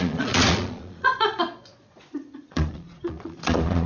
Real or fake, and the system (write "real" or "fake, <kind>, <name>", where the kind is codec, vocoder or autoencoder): fake, vocoder, Vocos